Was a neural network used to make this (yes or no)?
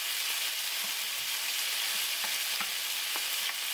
no